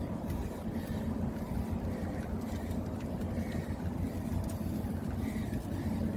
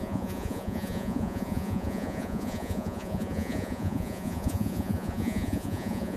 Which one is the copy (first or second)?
second